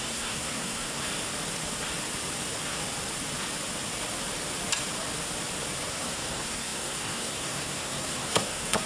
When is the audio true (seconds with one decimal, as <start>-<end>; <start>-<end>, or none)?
1.1-5.9